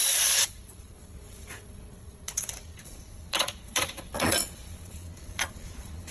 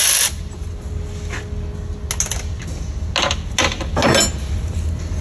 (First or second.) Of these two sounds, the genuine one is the second